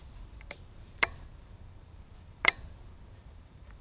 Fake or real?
fake